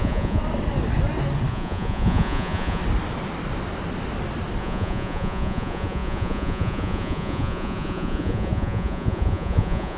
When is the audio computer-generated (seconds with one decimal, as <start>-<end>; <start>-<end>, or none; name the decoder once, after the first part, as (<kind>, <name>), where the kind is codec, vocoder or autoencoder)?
0.0-0.4 (vocoder, Vocos); 1.5-2.8; 4.6-10.0

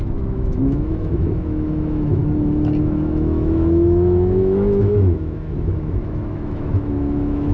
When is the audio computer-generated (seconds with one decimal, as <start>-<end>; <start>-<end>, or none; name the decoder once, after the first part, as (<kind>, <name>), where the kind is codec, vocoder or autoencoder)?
0.0-2.2 (autoencoder, DAC-VAE); 2.8-7.5